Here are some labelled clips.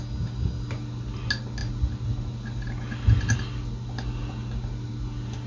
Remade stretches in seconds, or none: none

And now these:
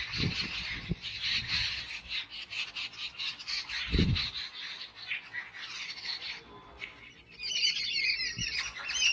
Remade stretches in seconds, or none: none

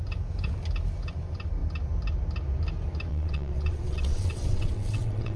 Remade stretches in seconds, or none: 3.1-5.4 (vocoder, WaveNeXt)

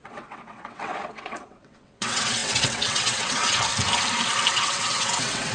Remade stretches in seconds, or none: 0.0-3.7 (vocoder, WaveNeXt); 4.5-5.5

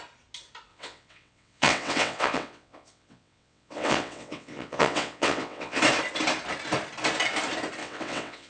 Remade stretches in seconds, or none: 0.7-5.8 (vocoder, WaveNeXt); 7.8-8.5